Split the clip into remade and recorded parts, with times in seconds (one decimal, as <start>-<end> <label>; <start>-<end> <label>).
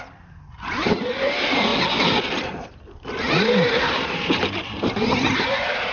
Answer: 0.0-1.7 remade; 1.7-3.7 recorded; 3.7-5.9 remade